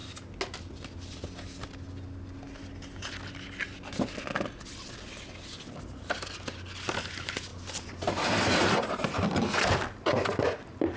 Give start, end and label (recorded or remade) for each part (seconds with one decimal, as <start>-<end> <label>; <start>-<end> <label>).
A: 0.0-11.0 recorded